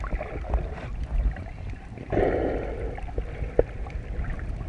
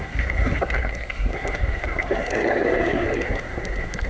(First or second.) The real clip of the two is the first